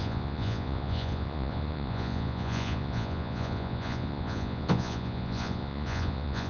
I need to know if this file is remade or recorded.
remade